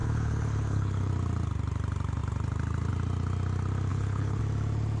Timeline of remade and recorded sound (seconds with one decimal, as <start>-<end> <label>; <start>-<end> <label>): 0.0-1.1 remade; 1.1-3.9 recorded; 3.9-4.4 remade; 4.4-5.0 recorded